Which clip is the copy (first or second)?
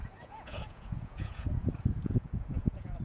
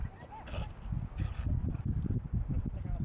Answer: first